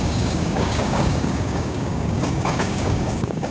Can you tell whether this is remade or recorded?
remade